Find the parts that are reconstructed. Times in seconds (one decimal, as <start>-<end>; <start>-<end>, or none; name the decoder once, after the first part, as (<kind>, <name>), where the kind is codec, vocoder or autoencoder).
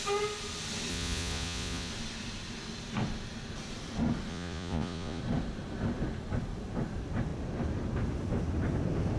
0.9-1.9 (vocoder, Vocos); 4.3-5.2